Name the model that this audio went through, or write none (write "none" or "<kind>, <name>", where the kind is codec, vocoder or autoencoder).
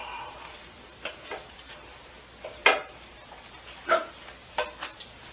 none